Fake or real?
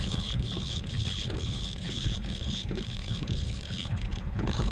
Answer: fake